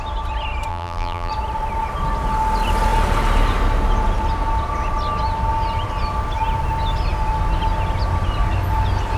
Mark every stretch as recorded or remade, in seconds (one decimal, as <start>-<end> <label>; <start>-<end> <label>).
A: 0.0-0.7 recorded; 0.7-1.3 remade; 1.3-9.2 recorded